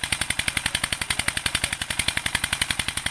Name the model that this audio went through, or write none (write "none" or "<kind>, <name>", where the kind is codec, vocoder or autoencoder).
none